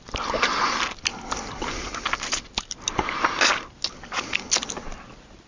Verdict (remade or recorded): recorded